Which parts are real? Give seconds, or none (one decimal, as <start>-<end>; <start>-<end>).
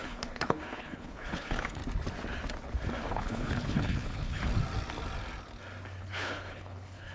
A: 1.8-3.1; 4.5-6.0